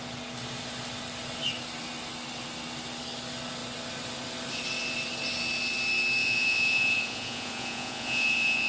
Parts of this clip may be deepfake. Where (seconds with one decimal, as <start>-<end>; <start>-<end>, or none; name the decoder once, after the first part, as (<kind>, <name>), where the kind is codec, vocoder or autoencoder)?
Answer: 6.2-8.7 (vocoder, Vocos)

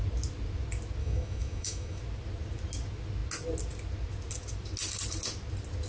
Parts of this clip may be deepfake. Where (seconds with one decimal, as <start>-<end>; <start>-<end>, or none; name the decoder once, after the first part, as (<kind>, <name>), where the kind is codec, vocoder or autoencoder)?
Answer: 1.0-2.0 (autoencoder, DAC-VAE)